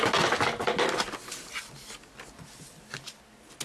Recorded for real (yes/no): yes